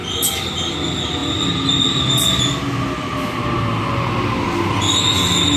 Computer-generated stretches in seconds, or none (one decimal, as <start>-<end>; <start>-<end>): none